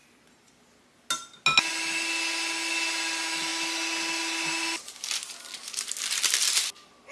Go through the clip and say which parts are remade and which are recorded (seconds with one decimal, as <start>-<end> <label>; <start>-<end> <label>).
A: 0.0-7.1 recorded